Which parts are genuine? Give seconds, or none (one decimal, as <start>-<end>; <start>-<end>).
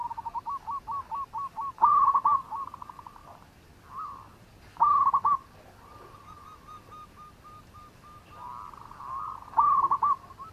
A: 0.0-10.5